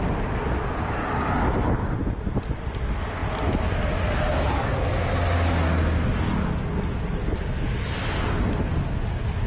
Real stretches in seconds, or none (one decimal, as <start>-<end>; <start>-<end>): 0.0-9.5